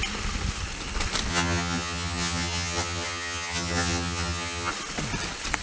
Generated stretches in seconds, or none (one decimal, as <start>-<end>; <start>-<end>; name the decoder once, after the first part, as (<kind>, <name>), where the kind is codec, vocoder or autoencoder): 1.3-4.7 (vocoder, HiFi-GAN)